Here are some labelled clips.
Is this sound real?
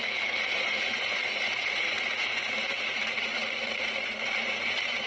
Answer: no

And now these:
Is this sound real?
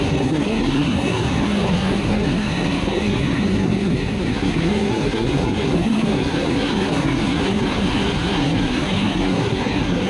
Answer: no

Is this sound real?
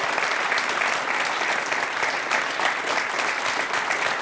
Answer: yes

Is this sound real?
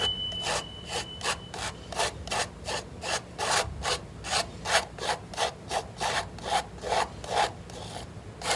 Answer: yes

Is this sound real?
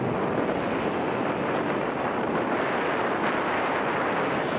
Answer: yes